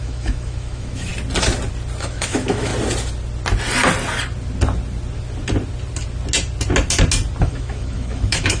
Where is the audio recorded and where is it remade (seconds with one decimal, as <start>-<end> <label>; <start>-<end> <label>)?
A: 0.0-1.1 remade; 1.1-2.0 recorded; 2.0-2.7 remade; 2.7-7.4 recorded; 7.4-8.6 remade